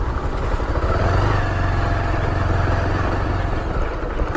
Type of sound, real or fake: real